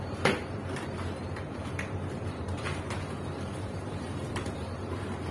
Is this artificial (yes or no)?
yes